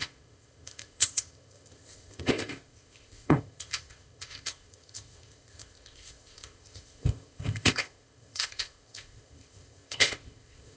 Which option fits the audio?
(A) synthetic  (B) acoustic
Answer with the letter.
A